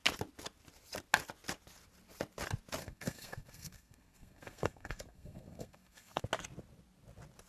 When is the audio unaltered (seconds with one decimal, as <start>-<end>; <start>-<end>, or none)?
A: 0.0-2.8; 6.2-7.5